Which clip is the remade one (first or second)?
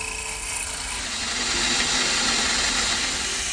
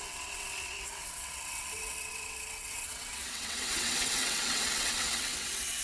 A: second